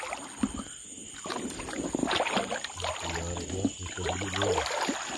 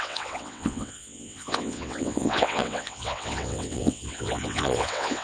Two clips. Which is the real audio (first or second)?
first